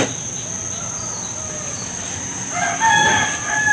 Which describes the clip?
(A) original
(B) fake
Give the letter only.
A